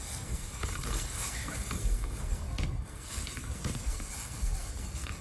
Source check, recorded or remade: remade